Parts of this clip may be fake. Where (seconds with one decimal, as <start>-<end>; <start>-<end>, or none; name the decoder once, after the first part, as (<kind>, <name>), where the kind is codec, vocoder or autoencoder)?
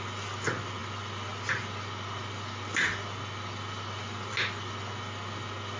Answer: none